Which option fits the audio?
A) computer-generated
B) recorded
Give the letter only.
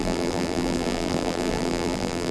A